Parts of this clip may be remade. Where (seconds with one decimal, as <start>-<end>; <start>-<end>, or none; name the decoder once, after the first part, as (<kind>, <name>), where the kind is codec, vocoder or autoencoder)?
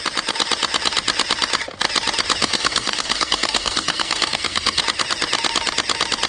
2.4-4.8 (codec, SNAC)